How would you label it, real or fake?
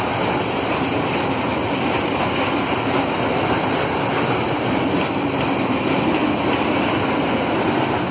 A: real